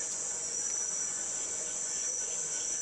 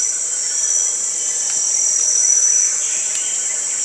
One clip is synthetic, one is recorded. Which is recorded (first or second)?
second